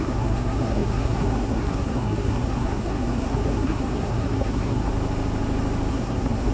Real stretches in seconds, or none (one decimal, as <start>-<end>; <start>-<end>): 4.9-5.9